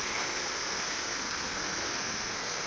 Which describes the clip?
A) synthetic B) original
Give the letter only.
A